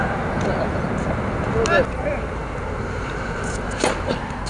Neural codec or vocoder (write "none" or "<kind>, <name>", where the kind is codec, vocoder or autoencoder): none